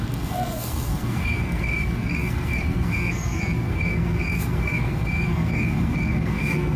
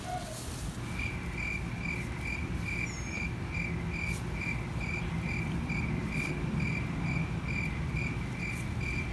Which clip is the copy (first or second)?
first